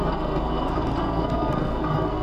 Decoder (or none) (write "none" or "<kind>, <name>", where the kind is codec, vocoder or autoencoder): codec, SNAC